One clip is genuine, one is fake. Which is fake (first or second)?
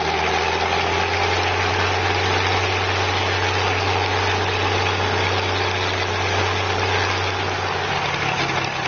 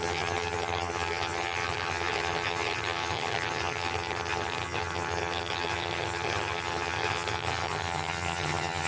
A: second